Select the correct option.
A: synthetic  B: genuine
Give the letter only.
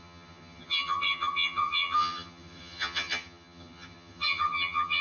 A